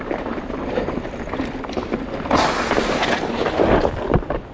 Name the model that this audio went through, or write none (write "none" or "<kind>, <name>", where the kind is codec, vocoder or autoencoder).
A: none